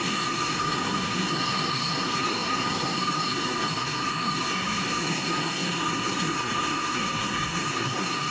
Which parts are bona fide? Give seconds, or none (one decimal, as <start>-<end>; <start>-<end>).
none

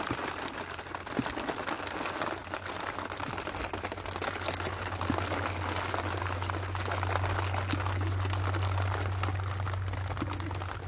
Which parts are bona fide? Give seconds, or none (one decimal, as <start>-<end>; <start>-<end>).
0.0-10.9

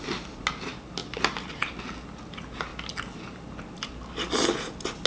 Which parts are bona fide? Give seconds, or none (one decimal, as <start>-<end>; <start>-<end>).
0.0-5.1

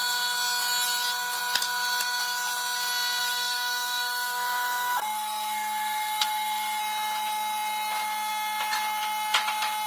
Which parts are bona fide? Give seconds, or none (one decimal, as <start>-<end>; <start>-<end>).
0.0-3.2; 6.8-9.9

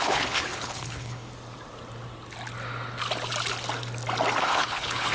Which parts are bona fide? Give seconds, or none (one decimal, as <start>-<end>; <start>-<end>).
1.3-4.4

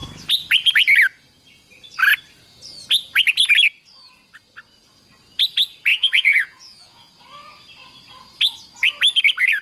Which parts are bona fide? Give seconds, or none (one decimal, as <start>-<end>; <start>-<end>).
0.0-5.9; 7.1-9.6